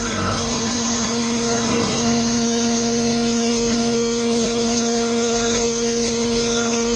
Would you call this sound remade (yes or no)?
yes